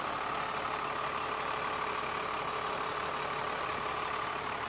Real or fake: real